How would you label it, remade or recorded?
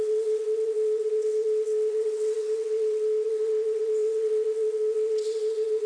remade